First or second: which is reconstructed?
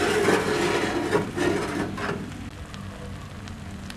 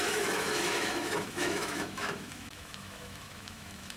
second